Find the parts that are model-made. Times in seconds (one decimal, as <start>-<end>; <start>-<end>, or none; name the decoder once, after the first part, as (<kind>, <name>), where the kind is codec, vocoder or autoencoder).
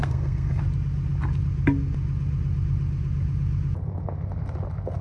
0.0-0.6 (codec, SNAC)